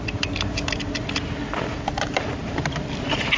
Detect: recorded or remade recorded